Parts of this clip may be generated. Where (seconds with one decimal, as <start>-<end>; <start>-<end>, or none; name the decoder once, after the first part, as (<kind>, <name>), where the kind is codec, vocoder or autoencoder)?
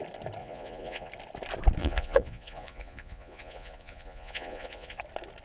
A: 0.4-1.1 (vocoder, Vocos); 1.8-5.0